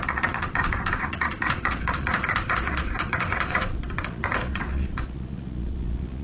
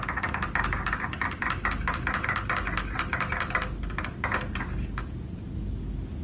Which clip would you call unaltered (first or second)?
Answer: second